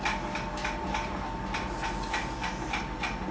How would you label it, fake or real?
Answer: real